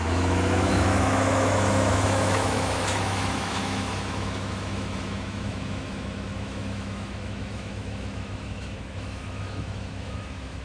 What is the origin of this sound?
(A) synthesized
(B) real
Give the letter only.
A